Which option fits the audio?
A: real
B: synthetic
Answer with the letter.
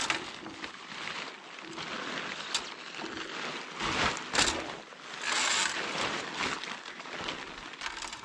A